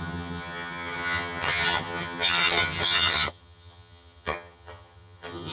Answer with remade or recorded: remade